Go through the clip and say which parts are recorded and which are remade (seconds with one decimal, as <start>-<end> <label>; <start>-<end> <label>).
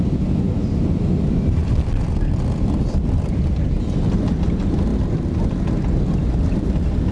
0.0-1.6 recorded; 1.6-4.4 remade; 4.4-7.1 recorded